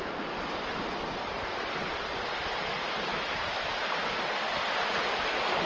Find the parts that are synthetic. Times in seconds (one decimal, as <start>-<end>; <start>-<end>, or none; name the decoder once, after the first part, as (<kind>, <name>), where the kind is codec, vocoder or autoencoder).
3.1-3.7 (autoencoder, DAC-VAE)